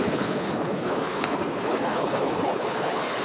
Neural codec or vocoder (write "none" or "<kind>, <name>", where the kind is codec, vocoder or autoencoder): codec, HILCodec